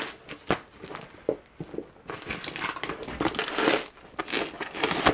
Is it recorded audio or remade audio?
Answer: recorded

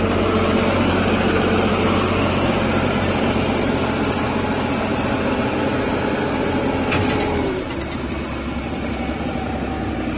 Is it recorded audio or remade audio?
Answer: remade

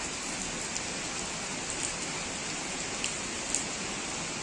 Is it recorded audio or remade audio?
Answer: recorded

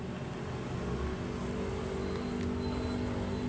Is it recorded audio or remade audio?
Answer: recorded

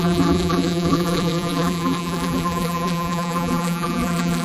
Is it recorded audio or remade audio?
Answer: remade